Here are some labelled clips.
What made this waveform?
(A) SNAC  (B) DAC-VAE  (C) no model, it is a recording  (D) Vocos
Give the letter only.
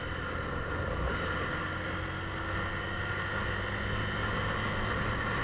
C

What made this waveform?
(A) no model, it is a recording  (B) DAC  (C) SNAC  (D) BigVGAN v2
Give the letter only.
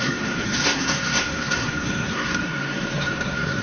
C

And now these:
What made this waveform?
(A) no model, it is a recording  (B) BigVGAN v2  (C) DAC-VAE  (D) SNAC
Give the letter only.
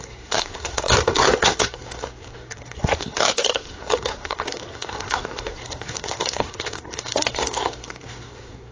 D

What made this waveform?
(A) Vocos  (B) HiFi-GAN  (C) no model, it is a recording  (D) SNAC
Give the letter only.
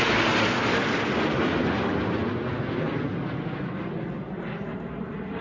C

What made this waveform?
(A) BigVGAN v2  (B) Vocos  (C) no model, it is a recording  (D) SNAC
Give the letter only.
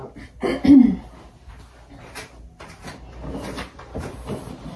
C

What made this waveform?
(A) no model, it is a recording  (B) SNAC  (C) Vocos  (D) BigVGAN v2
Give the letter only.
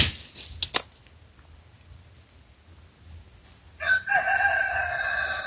A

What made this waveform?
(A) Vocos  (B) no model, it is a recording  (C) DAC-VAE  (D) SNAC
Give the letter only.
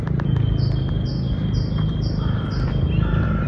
B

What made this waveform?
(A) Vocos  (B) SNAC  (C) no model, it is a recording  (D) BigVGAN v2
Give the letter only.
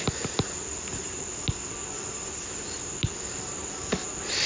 C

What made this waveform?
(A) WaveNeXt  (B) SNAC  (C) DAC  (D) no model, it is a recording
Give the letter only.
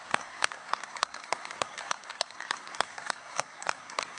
B